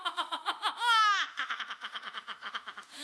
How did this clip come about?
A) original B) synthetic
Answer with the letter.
B